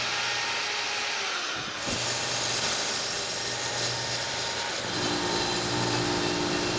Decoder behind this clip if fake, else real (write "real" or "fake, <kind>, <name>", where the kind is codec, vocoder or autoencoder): real